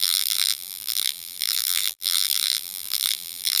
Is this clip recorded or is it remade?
remade